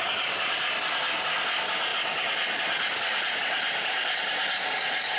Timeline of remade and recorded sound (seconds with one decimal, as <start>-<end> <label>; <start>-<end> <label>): 0.0-5.2 recorded